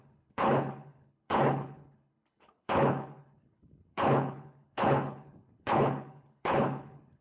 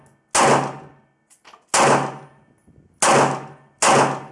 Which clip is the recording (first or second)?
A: second